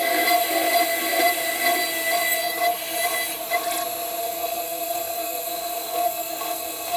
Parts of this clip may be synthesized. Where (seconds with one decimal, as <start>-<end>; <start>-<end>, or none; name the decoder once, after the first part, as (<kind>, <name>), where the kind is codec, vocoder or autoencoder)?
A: 4.2-7.0 (codec, SNAC)